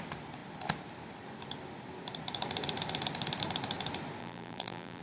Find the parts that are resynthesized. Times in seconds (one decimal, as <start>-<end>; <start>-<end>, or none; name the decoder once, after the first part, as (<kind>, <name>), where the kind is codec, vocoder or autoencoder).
4.2-5.0 (vocoder, BigVGAN v2)